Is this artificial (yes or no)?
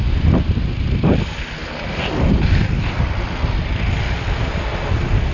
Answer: no